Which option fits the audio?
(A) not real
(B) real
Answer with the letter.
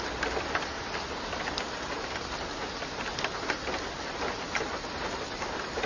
B